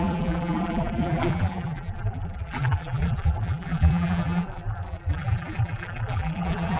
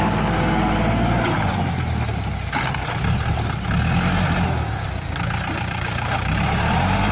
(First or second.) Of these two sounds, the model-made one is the first